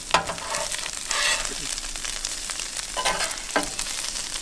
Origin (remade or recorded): recorded